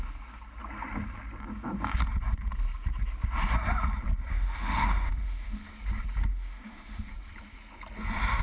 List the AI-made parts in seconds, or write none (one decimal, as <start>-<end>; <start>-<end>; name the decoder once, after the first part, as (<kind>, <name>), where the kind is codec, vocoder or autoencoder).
4.3-5.6 (autoencoder, DAC-VAE); 6.3-7.1